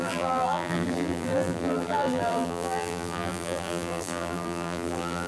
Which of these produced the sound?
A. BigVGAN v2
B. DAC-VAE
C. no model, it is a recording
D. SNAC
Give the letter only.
A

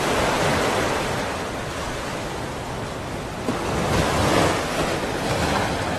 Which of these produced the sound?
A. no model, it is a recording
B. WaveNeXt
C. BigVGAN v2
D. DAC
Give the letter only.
A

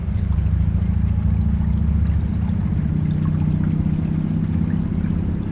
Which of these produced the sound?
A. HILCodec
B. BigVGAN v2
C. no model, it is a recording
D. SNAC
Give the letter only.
C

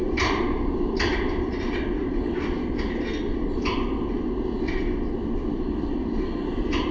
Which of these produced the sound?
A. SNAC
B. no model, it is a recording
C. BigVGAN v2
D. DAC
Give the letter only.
B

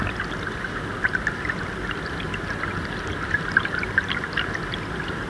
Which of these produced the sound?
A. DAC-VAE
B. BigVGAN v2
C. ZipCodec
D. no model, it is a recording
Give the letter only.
D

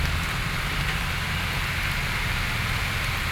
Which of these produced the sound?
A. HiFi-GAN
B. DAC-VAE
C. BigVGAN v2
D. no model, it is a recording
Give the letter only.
D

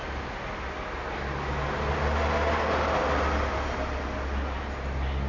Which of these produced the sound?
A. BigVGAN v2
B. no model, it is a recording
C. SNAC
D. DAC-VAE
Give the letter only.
B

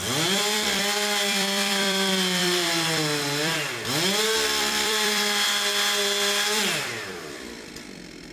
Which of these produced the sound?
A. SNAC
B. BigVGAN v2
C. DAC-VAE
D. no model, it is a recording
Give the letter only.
B